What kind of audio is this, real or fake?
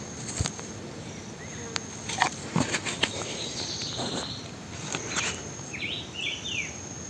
real